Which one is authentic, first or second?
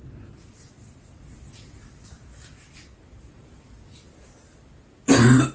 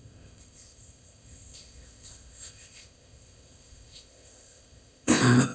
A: first